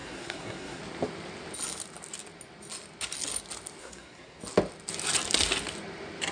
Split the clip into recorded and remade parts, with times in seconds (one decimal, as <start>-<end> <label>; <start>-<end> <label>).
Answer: 0.0-0.8 remade; 0.8-3.8 recorded; 3.8-4.4 remade; 4.4-6.3 recorded